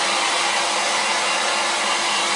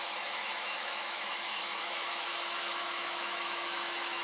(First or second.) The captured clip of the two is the first